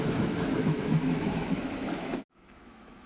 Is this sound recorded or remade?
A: remade